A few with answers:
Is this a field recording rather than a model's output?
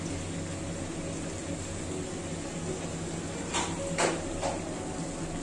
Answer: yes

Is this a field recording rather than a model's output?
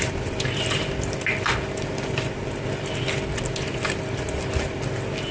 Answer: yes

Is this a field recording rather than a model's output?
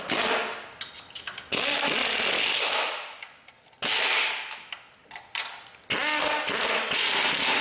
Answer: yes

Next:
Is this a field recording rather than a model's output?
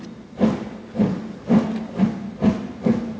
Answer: yes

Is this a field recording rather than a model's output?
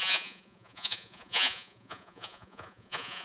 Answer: no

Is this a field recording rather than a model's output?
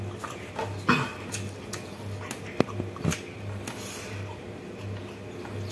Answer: yes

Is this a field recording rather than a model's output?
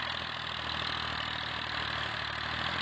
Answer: yes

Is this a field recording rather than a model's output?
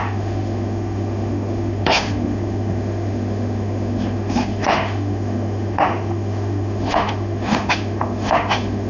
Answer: no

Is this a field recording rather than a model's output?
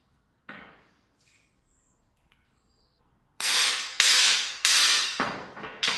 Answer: no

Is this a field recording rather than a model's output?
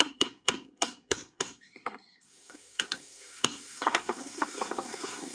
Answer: no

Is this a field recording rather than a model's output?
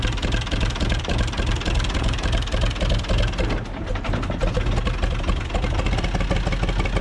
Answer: yes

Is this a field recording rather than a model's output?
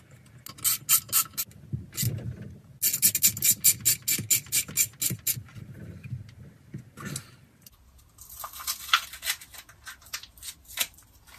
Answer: yes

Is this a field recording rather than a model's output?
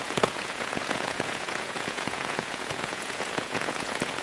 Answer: no